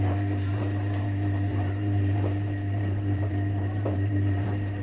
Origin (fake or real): fake